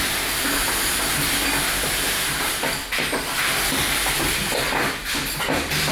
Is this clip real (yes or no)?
no